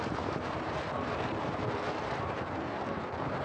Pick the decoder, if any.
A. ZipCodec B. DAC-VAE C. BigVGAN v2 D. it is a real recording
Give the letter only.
C